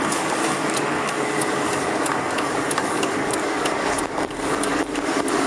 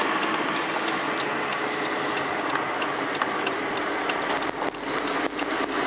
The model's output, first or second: first